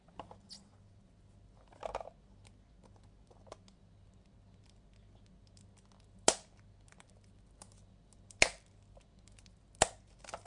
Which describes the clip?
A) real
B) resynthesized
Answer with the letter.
A